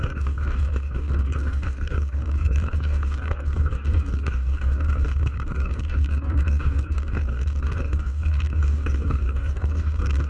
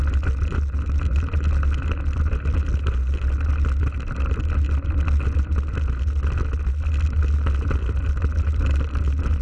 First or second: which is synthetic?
first